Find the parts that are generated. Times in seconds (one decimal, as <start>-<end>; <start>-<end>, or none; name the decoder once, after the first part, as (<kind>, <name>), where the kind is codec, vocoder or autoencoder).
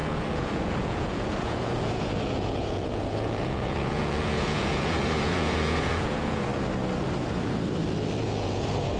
0.0-6.5 (vocoder, Vocos); 8.2-9.0